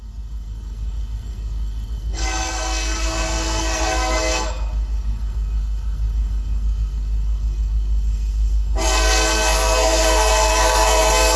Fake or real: fake